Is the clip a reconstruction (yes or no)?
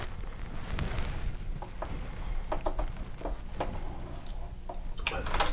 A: no